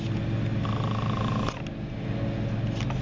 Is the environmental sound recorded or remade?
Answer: recorded